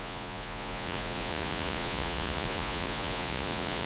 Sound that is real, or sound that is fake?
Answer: fake